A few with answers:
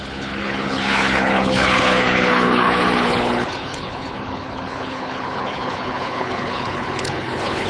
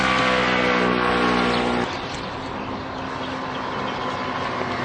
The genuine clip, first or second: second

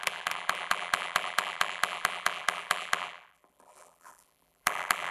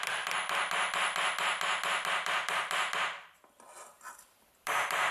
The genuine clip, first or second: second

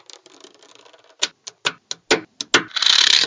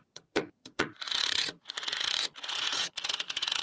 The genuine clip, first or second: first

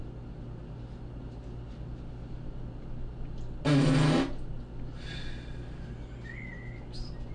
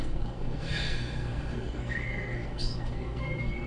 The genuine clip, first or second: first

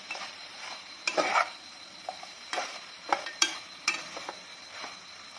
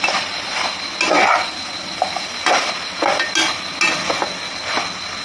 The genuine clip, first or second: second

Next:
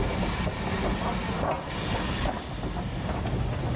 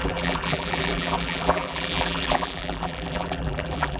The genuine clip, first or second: first